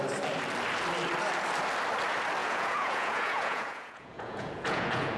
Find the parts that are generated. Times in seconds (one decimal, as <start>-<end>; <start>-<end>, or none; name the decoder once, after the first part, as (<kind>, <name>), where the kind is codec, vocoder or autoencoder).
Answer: 2.4-5.2 (vocoder, Vocos)